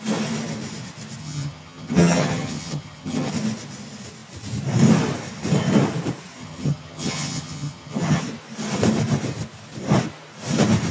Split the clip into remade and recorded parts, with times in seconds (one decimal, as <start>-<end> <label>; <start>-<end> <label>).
0.0-1.2 recorded; 1.2-3.3 remade; 3.3-6.4 recorded; 6.4-8.2 remade; 8.2-10.9 recorded